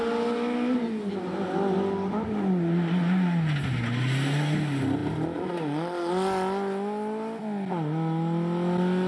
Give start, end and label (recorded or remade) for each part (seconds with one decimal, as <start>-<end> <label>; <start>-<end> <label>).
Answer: 0.0-9.1 recorded